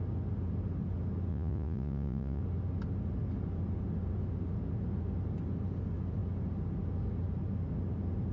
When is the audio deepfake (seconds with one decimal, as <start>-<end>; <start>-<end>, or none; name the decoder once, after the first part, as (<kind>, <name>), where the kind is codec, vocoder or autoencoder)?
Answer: 1.3-2.4 (vocoder, Vocos)